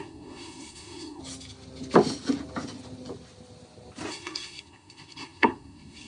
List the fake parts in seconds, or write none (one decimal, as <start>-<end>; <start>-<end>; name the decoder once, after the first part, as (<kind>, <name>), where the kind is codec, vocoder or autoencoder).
0.0-1.2 (codec, SNAC); 4.1-6.1